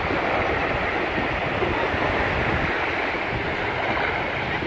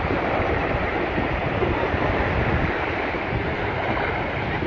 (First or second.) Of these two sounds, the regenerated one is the second